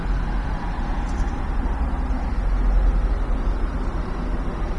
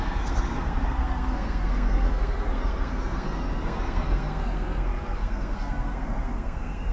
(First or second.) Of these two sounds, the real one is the first